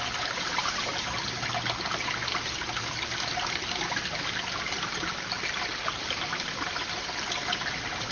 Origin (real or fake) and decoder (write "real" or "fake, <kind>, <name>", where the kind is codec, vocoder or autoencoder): real